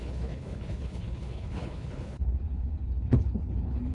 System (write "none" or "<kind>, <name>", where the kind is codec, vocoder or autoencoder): codec, HILCodec